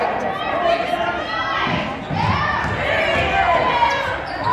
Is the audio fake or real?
real